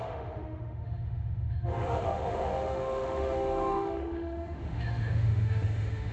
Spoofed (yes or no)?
yes